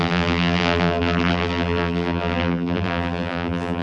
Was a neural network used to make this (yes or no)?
yes